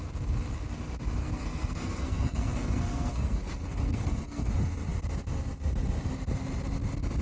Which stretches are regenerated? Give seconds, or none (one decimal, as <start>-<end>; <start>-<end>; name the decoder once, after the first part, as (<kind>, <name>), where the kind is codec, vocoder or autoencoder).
1.2-4.5 (codec, SNAC)